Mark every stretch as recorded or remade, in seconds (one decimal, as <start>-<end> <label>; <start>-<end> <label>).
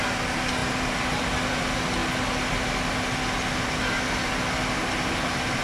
0.0-5.6 recorded